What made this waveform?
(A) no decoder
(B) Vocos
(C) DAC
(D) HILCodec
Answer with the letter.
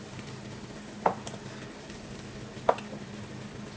A